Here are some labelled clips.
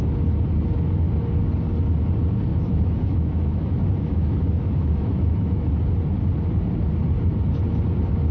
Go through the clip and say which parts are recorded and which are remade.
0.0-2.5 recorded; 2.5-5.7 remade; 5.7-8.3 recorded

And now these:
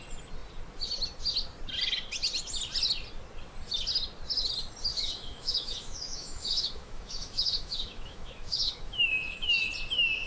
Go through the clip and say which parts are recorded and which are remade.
0.0-4.9 recorded; 4.9-9.7 remade; 9.7-10.3 recorded